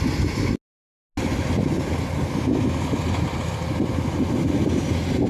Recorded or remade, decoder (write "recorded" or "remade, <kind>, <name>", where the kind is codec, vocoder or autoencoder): recorded